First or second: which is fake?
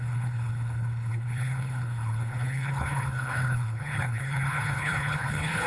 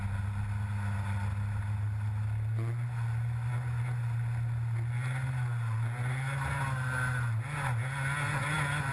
first